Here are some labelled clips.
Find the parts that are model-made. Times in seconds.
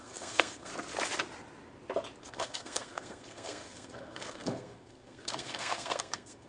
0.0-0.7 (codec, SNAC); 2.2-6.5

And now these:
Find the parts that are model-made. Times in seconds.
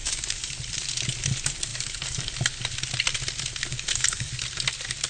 0.0-0.6 (codec, DAC); 1.7-2.3; 3.7-4.3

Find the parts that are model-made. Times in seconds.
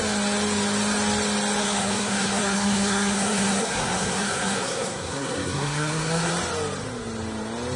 1.6-6.3 (codec, SNAC)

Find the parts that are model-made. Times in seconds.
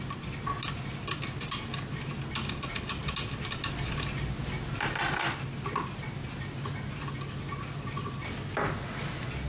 none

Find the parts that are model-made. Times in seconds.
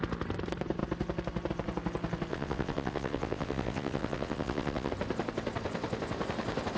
2.3-4.9 (vocoder, WaveNeXt)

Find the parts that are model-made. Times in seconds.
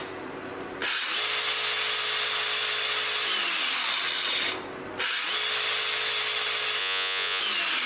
6.8-7.4 (vocoder, Vocos)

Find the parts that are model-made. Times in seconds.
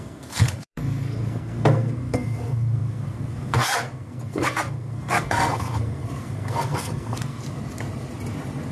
0.0-7.4 (codec, SNAC)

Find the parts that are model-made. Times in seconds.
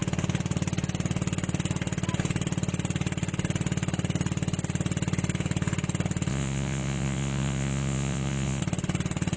6.3-8.6 (vocoder, Vocos)